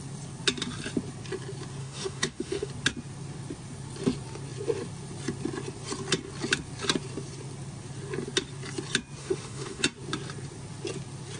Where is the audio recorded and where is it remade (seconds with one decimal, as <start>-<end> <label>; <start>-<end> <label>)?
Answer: 0.0-1.8 recorded; 1.8-2.7 remade; 2.7-9.2 recorded; 9.2-9.8 remade; 9.8-11.4 recorded